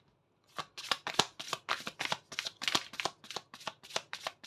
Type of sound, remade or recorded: recorded